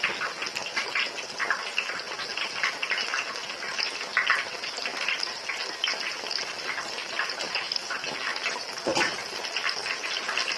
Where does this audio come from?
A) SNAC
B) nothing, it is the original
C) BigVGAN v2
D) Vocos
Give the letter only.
B